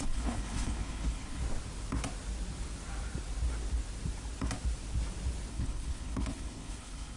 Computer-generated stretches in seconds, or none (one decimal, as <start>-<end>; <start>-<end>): 0.0-1.4; 5.5-7.2